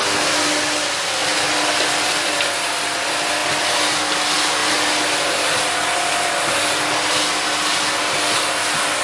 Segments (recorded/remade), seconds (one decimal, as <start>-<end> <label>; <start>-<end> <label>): 0.0-9.0 recorded